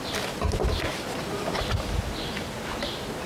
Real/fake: real